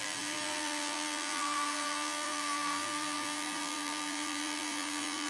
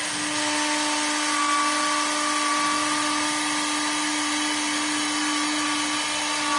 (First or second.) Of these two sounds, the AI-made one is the first